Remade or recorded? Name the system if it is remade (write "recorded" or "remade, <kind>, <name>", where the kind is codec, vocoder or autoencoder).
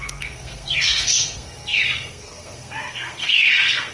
remade, codec, SNAC